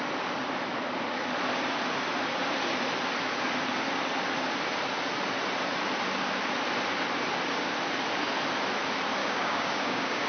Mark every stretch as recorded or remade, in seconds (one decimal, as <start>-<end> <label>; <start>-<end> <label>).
0.0-9.2 recorded; 9.2-10.3 remade